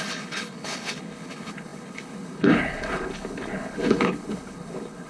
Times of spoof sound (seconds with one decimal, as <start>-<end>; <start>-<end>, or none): 0.0-5.1